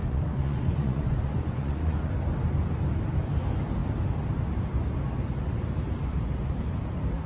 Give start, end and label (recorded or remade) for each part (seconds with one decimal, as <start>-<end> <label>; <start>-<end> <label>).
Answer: 0.0-2.1 remade; 2.1-7.3 recorded